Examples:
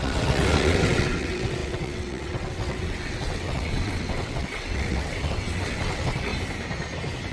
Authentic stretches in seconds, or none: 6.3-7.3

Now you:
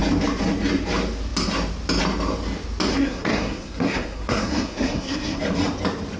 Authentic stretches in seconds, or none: 0.0-2.9; 5.4-6.2

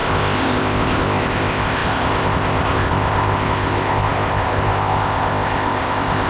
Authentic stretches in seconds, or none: none

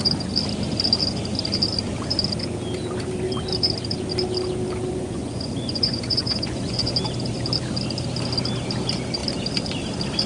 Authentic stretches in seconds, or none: 0.0-4.9; 6.9-10.3

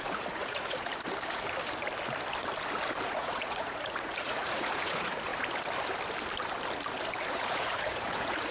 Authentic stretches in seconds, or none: 0.9-3.0; 5.3-7.3

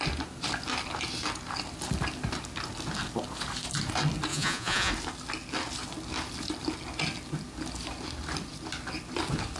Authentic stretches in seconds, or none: 0.0-4.3; 4.9-9.6

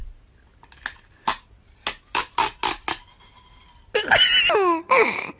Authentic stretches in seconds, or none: 0.0-5.4